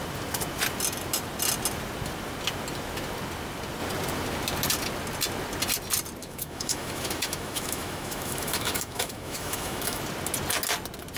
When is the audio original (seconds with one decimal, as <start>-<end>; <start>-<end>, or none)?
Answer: 0.0-6.2; 10.0-11.2